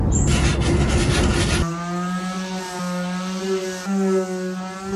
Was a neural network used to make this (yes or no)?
no